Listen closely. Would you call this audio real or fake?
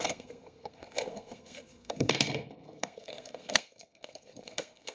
fake